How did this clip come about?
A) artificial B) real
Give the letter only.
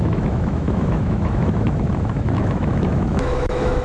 A